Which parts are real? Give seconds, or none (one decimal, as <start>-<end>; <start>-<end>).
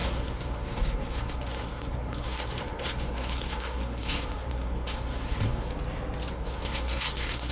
5.7-6.3